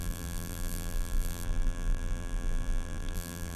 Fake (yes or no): yes